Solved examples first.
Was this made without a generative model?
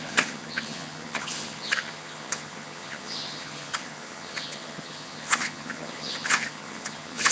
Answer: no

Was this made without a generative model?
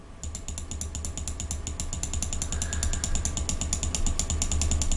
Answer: yes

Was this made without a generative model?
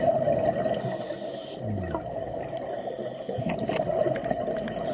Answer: yes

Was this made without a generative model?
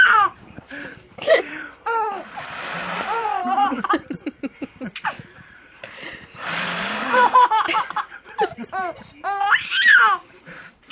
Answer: no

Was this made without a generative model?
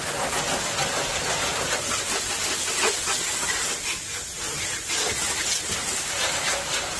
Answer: yes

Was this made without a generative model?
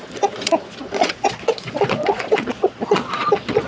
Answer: no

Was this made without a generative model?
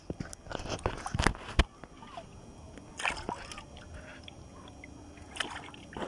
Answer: yes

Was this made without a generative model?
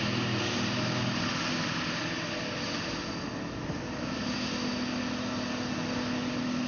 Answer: yes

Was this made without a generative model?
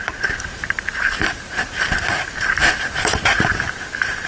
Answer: no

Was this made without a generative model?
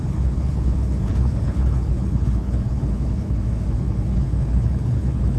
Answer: no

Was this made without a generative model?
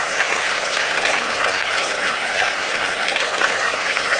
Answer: no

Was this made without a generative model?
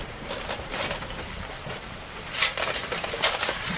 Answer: no